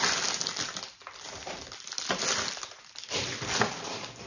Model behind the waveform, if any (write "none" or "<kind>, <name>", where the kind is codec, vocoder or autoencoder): none